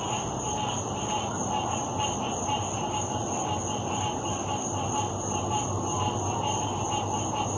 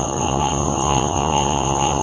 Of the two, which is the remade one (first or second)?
second